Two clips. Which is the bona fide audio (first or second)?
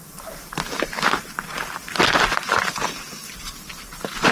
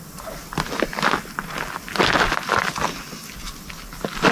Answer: second